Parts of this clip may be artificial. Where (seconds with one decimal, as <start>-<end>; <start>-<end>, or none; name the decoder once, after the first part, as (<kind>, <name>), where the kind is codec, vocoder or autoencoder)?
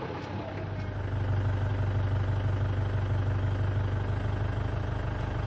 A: none